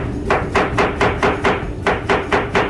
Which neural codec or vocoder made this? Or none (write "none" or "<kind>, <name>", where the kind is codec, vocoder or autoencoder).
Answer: none